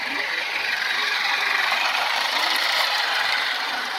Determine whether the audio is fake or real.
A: fake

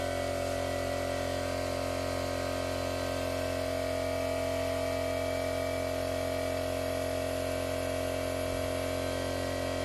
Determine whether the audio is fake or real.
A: real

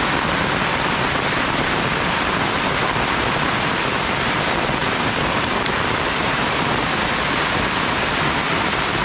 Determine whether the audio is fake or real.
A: fake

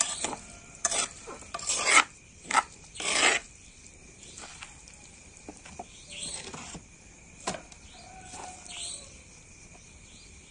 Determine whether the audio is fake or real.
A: fake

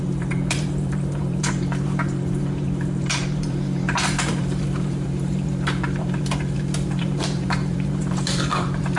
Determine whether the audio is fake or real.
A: fake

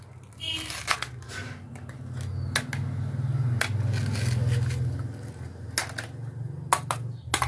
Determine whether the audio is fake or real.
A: real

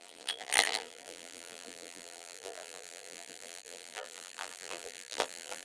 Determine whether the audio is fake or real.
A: fake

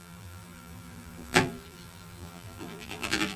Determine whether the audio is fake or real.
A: fake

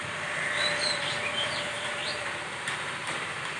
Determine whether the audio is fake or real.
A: fake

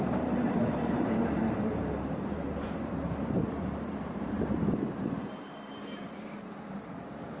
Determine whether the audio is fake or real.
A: fake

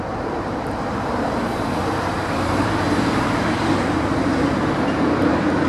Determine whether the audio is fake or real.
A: fake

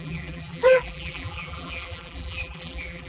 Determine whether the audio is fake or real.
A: fake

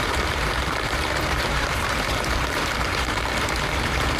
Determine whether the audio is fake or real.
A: fake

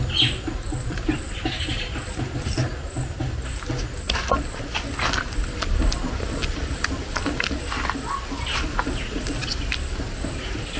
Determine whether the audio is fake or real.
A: real